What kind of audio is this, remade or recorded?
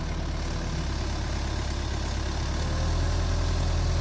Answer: recorded